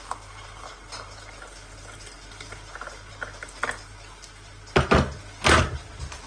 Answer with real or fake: real